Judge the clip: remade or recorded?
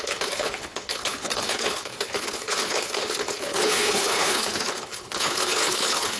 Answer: remade